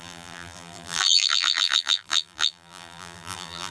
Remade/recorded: remade